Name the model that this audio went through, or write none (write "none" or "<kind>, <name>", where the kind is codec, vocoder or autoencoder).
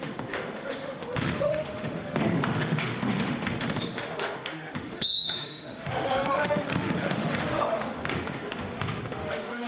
autoencoder, DAC-VAE